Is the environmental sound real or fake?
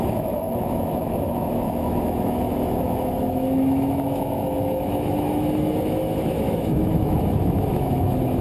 fake